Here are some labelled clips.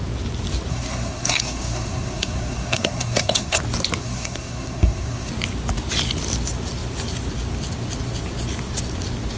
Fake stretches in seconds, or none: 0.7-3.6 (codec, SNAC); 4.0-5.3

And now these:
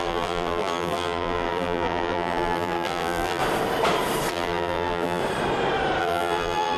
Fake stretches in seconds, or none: 0.0-3.4 (vocoder, BigVGAN v2); 4.3-5.2; 6.0-6.8

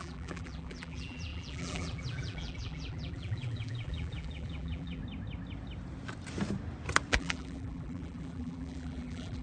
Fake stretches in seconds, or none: 0.0-5.0 (vocoder, BigVGAN v2); 7.1-9.4

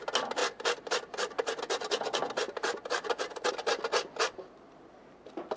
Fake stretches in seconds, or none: none